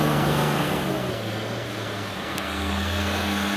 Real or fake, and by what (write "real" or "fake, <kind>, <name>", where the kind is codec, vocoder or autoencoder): fake, codec, SNAC